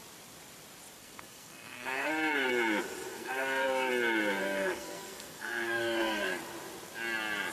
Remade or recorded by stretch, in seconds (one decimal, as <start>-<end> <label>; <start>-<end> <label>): 0.0-1.0 recorded; 1.0-2.5 remade; 2.5-3.1 recorded; 3.1-3.9 remade; 3.9-4.4 recorded; 4.4-6.3 remade; 6.3-7.5 recorded